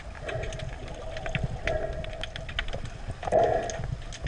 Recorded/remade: recorded